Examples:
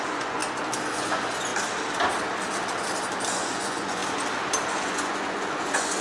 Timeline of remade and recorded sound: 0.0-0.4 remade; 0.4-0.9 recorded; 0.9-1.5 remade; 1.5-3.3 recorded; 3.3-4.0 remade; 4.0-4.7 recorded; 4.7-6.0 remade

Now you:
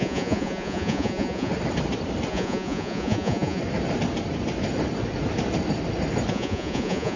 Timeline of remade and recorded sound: 0.0-1.5 remade; 1.5-2.3 recorded; 2.3-3.6 remade; 3.6-6.3 recorded; 6.3-7.2 remade

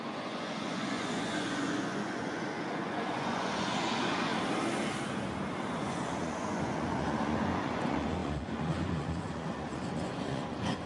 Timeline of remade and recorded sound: 0.0-4.3 remade; 4.3-5.7 recorded; 5.7-10.9 remade

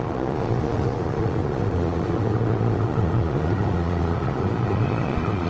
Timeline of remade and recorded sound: 0.0-5.5 remade

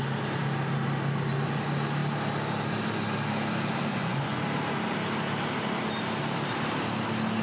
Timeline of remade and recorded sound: 0.0-3.9 recorded; 3.9-4.4 remade; 4.4-7.4 recorded